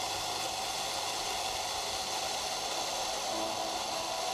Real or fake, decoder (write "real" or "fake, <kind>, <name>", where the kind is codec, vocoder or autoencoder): real